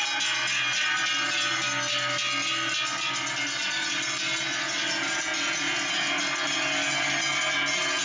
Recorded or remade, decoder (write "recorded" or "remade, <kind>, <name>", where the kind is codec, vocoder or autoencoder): recorded